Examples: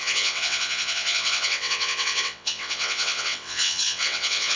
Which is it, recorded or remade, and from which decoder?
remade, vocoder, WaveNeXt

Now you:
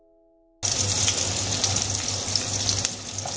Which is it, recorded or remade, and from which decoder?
recorded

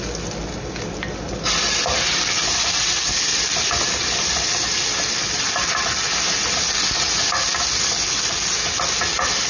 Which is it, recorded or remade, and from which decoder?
recorded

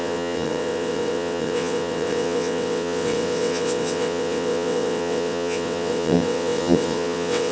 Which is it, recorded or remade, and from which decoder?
remade, vocoder, WaveNeXt